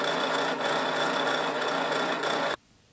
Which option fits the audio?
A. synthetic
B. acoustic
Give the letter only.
A